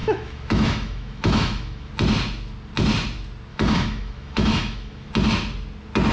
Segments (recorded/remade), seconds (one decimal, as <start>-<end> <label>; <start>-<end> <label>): 0.0-1.9 remade; 1.9-3.5 recorded; 3.5-5.1 remade; 5.1-6.1 recorded